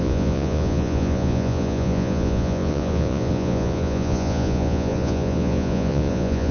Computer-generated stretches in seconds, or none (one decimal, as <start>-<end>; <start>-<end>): 0.0-6.5